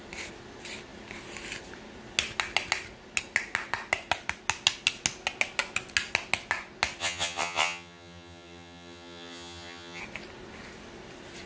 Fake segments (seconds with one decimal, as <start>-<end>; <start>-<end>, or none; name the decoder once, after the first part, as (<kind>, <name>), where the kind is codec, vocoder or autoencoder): 7.0-10.0 (vocoder, HiFi-GAN)